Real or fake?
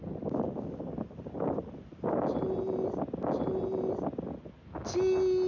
real